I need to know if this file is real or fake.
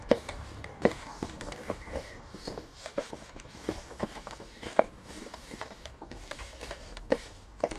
fake